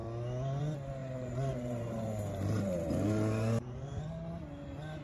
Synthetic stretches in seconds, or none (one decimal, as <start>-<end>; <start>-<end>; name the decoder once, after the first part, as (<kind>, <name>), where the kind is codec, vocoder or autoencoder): 1.0-4.0 (vocoder, BigVGAN v2)